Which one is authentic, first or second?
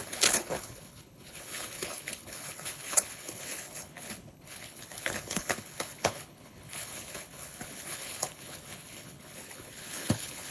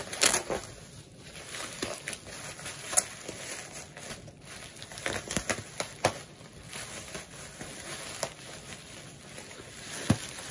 second